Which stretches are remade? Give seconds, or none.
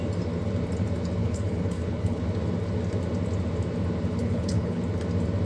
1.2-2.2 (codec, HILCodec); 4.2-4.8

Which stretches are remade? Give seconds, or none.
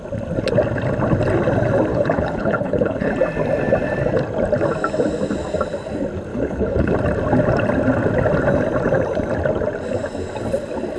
1.9-3.1 (codec, HILCodec); 6.3-6.9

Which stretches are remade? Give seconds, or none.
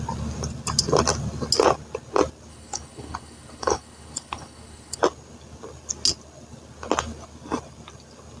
2.5-5.0 (codec, HILCodec)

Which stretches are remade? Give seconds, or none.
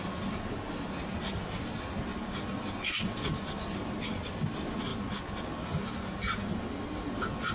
none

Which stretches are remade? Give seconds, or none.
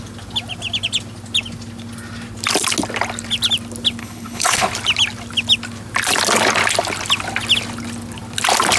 4.0-4.7 (codec, HILCodec)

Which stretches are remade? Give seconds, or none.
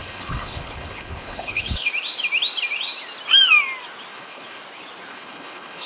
0.0-1.9 (codec, HILCodec); 4.1-4.6; 5.1-5.9